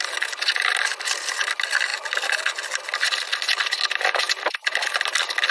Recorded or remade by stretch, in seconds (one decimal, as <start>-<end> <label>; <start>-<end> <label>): 0.0-5.5 recorded